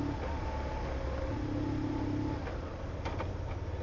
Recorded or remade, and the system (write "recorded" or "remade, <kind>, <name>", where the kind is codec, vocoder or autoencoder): recorded